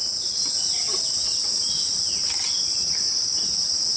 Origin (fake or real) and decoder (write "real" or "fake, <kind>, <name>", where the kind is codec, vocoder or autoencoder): real